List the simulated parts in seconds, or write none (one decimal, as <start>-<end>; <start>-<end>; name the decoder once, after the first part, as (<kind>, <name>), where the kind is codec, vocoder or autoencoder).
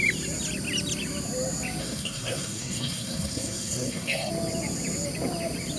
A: 1.8-4.3 (codec, SNAC)